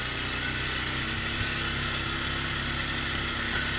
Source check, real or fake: real